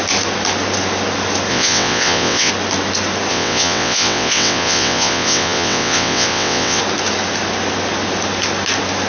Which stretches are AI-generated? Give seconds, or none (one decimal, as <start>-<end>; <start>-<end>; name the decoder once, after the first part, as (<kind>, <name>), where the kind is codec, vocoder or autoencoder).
1.5-2.5 (vocoder, WaveNeXt); 3.3-6.8